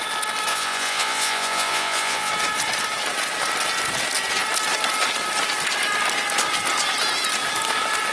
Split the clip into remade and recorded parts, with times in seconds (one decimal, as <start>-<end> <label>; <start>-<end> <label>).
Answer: 0.0-0.5 recorded; 0.5-2.3 remade; 2.3-8.1 recorded